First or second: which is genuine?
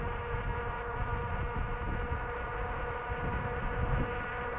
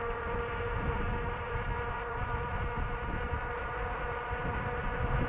first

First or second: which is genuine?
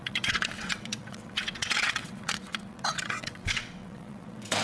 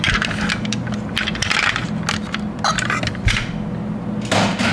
second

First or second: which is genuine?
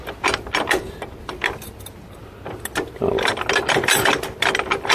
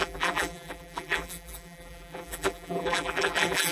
first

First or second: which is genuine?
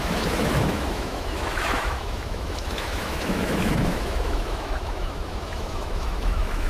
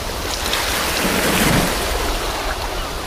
second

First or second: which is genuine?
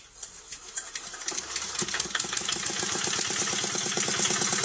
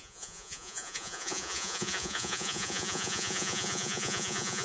first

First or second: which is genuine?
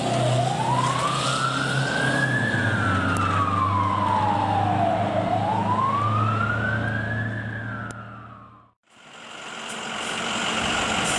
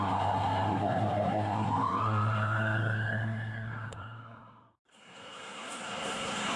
first